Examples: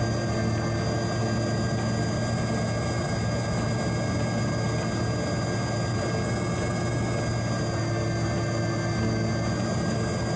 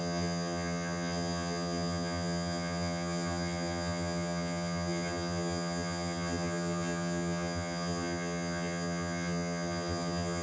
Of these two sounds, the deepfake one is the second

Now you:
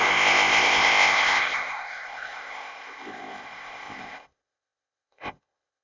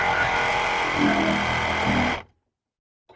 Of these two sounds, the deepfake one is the first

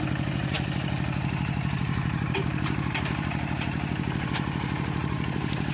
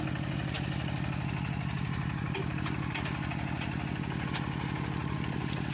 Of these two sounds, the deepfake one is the first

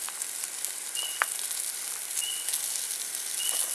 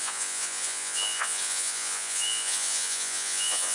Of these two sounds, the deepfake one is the second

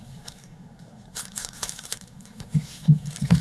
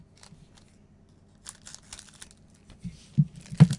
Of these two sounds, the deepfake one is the first